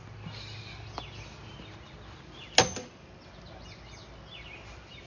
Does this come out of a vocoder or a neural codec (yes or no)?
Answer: no